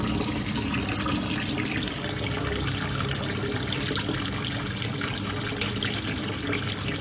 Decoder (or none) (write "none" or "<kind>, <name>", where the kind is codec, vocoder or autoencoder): none